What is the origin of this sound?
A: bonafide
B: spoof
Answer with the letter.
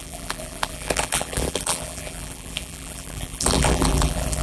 B